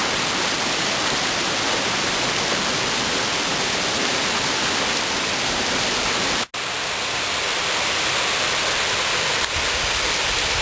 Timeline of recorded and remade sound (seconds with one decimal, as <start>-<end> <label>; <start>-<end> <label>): 0.0-10.6 recorded